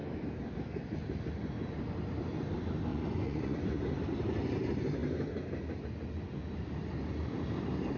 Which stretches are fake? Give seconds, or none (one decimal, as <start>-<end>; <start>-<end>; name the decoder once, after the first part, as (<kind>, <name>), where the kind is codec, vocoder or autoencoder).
2.9-3.6 (vocoder, Vocos)